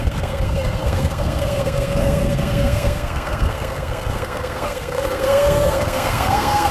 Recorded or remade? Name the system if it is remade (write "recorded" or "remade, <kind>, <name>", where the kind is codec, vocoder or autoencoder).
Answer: remade, codec, SNAC